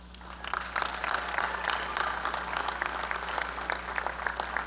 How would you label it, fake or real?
real